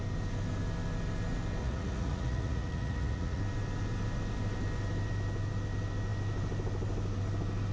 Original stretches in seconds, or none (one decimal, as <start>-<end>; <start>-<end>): 0.0-1.6; 3.4-7.7